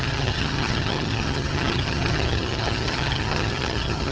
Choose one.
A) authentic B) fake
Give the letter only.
B